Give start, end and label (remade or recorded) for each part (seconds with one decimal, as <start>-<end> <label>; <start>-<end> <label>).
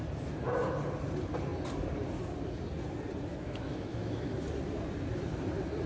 0.0-3.3 recorded; 3.3-4.4 remade; 4.4-5.9 recorded